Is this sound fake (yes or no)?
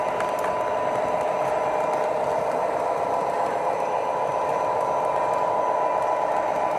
no